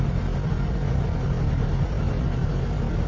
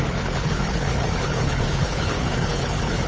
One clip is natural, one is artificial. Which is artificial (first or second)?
second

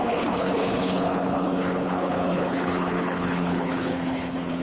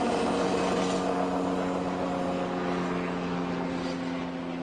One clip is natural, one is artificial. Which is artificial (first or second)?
first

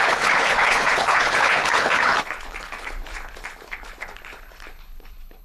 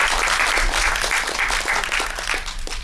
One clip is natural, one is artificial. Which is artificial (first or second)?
first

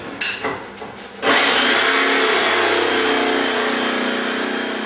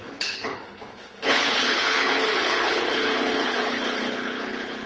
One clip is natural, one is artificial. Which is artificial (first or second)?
second